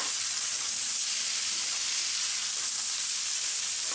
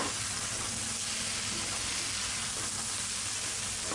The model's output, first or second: first